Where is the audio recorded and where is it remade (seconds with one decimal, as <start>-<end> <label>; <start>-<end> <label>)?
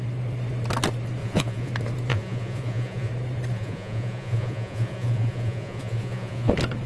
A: 0.0-1.2 recorded; 1.2-1.7 remade; 1.7-2.1 recorded; 2.1-3.1 remade; 3.1-3.5 recorded; 3.5-6.5 remade; 6.5-6.9 recorded